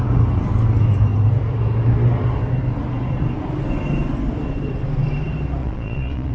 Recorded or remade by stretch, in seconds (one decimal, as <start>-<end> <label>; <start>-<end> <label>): 0.0-5.6 recorded; 5.6-6.3 remade